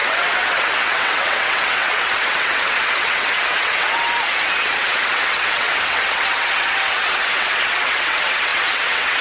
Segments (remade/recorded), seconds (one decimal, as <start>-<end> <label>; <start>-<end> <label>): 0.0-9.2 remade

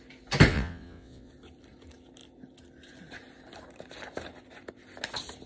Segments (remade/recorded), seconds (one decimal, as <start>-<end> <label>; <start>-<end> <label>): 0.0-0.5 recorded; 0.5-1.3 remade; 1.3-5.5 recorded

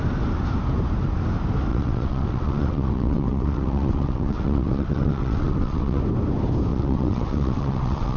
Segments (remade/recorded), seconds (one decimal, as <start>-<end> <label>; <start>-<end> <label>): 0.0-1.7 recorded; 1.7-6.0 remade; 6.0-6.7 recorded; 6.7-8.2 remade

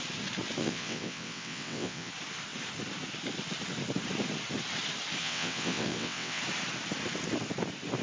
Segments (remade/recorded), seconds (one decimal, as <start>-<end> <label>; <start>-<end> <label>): 0.0-0.6 recorded; 0.6-2.1 remade; 2.1-5.2 recorded; 5.2-6.4 remade; 6.4-8.0 recorded

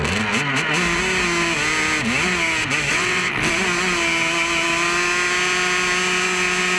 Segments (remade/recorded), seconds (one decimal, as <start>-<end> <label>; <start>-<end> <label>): 0.0-2.9 recorded; 2.9-3.5 remade; 3.5-6.8 recorded

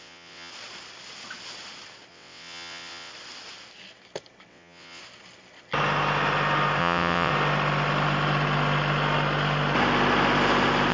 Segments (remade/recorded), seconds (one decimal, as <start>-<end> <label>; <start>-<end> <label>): 0.0-0.5 remade; 0.5-2.1 recorded; 2.1-3.1 remade; 3.1-4.5 recorded; 4.5-5.0 remade; 5.0-6.8 recorded; 6.8-7.3 remade; 7.3-10.9 recorded